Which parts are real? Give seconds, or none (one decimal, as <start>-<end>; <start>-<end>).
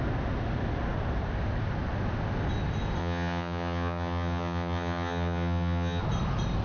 0.0-3.0; 6.0-6.6